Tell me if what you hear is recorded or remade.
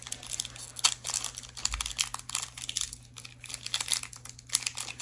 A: recorded